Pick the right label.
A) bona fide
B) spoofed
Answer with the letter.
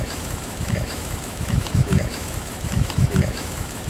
B